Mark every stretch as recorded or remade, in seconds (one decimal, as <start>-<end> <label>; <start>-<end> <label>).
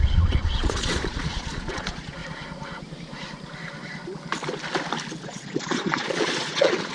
0.0-2.2 remade; 2.2-5.1 recorded; 5.1-6.9 remade